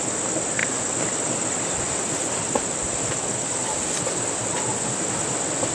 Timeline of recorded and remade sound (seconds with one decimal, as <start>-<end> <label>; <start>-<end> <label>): 0.0-5.7 recorded